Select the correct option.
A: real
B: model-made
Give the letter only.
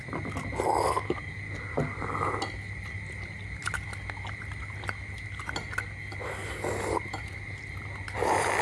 A